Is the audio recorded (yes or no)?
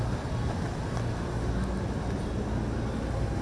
yes